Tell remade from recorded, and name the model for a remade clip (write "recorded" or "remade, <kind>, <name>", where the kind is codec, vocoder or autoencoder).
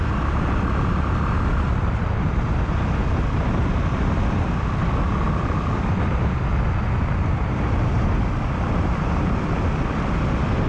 recorded